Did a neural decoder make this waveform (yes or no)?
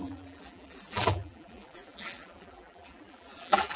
yes